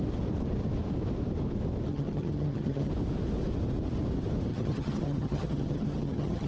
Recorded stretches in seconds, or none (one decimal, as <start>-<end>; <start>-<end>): 0.0-1.9; 2.9-4.5